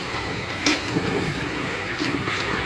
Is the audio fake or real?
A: fake